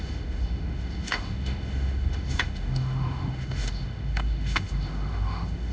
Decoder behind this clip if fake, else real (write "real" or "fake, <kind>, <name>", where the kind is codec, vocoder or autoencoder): fake, autoencoder, DAC-VAE